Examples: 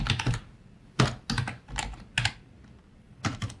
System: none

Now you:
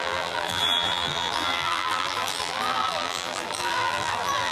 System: vocoder, BigVGAN v2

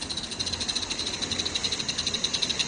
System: vocoder, BigVGAN v2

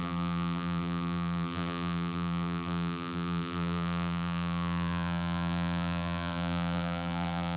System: vocoder, BigVGAN v2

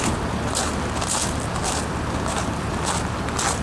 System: none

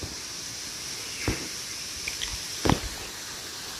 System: none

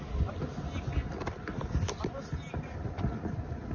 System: none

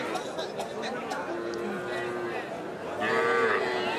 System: none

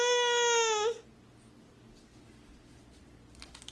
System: none